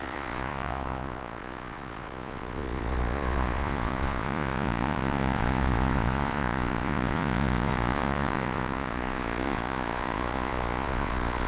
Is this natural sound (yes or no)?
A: no